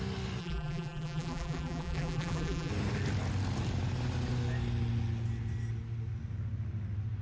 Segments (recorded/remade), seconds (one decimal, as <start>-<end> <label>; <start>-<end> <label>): 0.0-0.4 recorded; 0.4-2.7 remade; 2.7-7.2 recorded